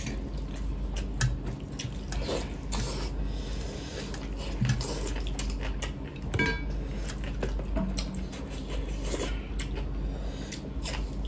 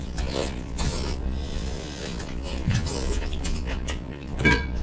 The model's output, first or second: second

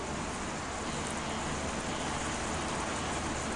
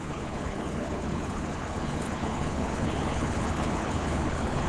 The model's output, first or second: second